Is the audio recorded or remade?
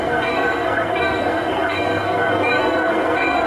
remade